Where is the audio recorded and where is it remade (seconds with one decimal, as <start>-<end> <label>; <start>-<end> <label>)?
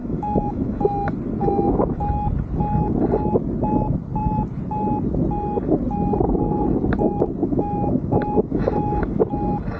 0.0-0.8 remade; 0.8-1.4 recorded; 1.4-2.0 remade; 2.0-7.4 recorded; 7.4-9.2 remade; 9.2-9.8 recorded